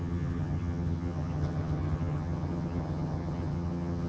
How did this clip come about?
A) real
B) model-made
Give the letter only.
B